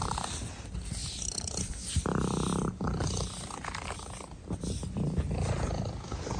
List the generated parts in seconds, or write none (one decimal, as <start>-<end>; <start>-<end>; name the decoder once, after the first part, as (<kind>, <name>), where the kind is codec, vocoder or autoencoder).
none

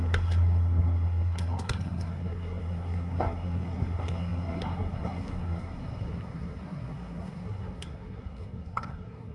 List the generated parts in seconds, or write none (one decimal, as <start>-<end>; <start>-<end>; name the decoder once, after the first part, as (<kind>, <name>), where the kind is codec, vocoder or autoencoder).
0.0-9.3 (codec, SNAC)